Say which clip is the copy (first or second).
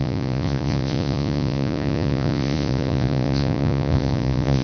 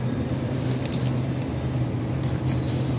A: first